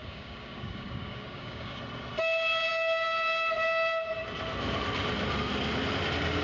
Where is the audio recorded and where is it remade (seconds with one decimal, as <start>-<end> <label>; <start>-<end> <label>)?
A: 0.0-1.8 remade; 1.8-6.4 recorded